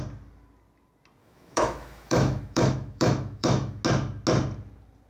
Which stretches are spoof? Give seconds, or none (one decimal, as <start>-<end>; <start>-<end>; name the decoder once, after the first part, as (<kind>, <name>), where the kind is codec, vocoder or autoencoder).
1.2-3.8 (autoencoder, DAC-VAE)